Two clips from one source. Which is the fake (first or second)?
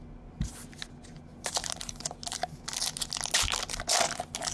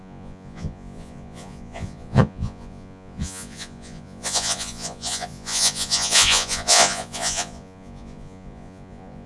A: second